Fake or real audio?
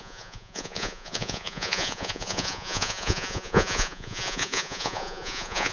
fake